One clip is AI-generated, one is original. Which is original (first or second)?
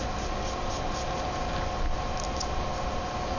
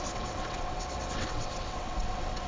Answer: first